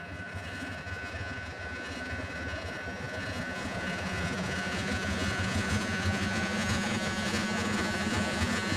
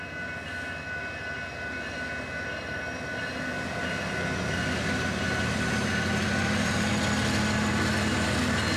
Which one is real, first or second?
second